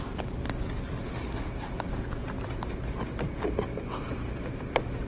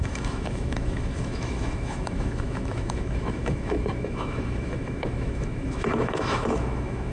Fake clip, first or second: second